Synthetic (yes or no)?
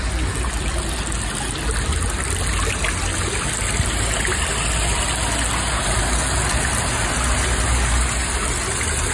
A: no